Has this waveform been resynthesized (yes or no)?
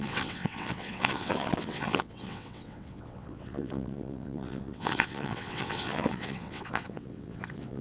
yes